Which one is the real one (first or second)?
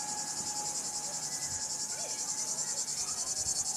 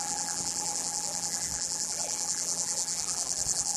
first